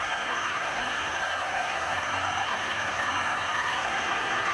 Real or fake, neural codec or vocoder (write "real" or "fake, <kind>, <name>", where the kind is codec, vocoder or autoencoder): fake, codec, SNAC